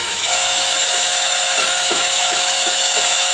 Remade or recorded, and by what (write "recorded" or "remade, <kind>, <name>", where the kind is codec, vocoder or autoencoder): remade, autoencoder, DAC-VAE